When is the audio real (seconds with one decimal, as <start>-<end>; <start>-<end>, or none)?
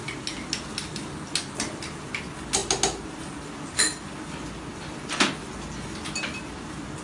0.0-7.0